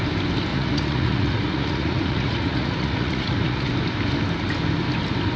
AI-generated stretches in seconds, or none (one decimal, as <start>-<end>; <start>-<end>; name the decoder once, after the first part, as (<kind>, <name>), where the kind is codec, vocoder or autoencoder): 0.5-3.7 (vocoder, Vocos)